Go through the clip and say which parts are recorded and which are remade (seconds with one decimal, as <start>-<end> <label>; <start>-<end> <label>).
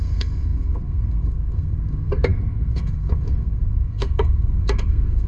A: 0.0-5.3 remade